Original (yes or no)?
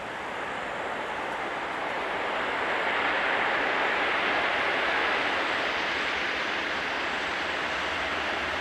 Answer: yes